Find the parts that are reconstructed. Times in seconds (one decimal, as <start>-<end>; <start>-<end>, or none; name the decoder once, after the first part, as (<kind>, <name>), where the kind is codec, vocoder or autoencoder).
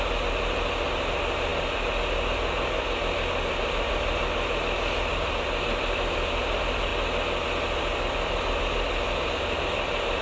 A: none